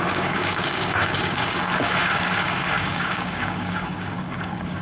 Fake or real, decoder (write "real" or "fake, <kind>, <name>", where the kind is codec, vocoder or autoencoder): fake, codec, DAC